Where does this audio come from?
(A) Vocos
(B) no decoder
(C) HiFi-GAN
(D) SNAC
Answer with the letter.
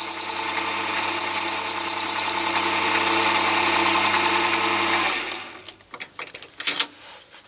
B